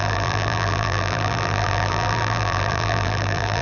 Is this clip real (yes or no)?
no